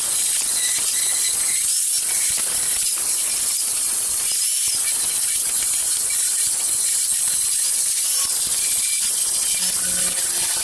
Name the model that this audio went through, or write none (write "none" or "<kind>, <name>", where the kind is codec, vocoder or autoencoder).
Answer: none